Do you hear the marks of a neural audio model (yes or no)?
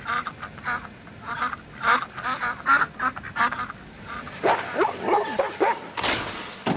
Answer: no